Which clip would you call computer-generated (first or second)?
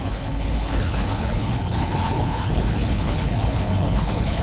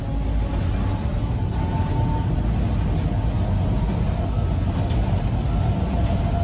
first